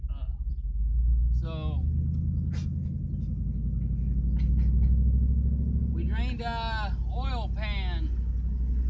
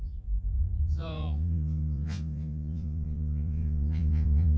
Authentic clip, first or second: first